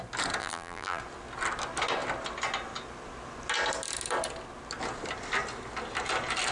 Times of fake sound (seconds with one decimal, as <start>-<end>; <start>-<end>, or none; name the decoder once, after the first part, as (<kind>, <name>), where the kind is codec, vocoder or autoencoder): 0.4-1.0 (vocoder, BigVGAN v2)